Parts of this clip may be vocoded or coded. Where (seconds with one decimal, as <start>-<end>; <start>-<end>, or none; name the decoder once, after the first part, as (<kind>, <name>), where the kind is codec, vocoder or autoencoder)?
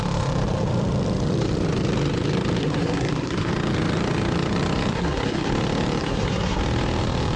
2.6-3.5 (codec, SNAC); 4.9-5.5; 6.0-6.6